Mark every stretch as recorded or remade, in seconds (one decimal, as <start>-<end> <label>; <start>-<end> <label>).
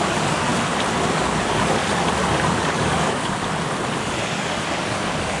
0.0-0.5 remade; 0.5-1.1 recorded; 1.1-1.8 remade; 1.8-2.6 recorded; 2.6-3.4 remade; 3.4-4.0 recorded; 4.0-5.4 remade